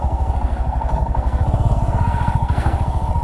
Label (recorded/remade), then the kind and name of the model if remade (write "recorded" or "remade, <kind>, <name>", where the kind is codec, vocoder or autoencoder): remade, codec, SNAC